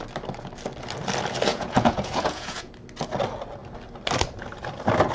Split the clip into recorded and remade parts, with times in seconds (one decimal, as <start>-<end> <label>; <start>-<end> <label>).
0.0-1.5 recorded; 1.5-2.7 remade; 2.7-5.1 recorded

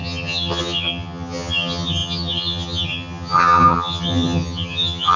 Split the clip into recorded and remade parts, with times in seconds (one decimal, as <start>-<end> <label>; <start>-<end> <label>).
0.0-5.2 remade

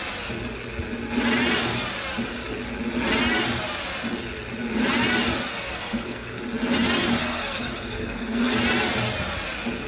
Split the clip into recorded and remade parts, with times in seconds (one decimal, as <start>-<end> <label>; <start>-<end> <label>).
0.0-5.5 recorded; 5.5-6.4 remade; 6.4-7.2 recorded; 7.2-8.6 remade; 8.6-9.9 recorded